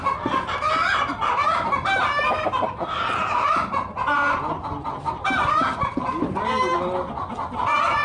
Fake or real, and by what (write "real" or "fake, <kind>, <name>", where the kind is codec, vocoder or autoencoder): real